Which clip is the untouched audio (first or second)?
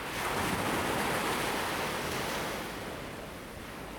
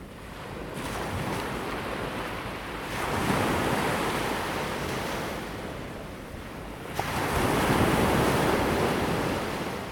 first